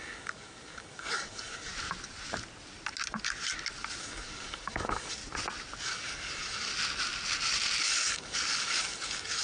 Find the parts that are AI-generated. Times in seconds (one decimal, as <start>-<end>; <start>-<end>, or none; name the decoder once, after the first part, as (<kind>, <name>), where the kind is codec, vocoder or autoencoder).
0.0-1.7 (codec, DAC); 4.0-5.2; 5.8-6.7; 7.8-9.4